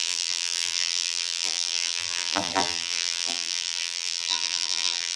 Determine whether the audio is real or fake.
fake